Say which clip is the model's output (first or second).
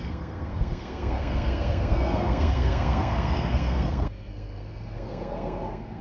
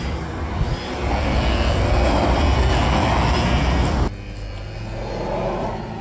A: first